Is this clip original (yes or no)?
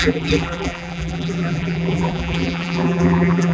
no